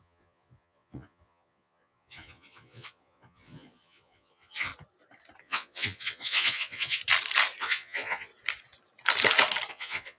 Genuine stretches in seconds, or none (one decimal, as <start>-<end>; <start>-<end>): 4.7-5.4; 7.0-7.6; 8.3-9.7